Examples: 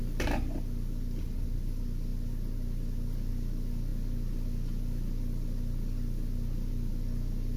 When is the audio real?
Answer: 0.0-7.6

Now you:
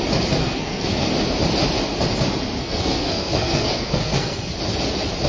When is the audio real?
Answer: 0.0-0.4; 1.1-2.6; 4.5-5.3

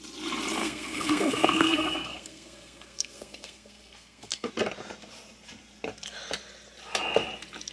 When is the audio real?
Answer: 0.0-0.6; 4.5-7.7

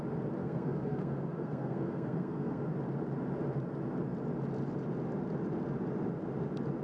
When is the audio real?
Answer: 0.0-0.4; 2.6-6.8

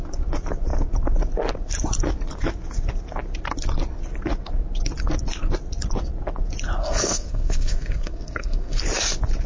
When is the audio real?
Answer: 0.0-6.8; 8.8-9.5